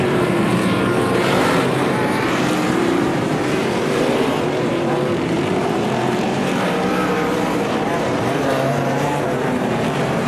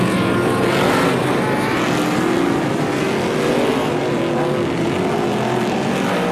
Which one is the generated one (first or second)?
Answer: first